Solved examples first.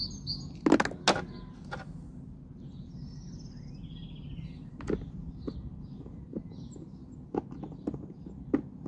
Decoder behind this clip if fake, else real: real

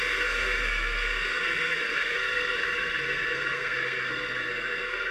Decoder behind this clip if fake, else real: fake, codec, SNAC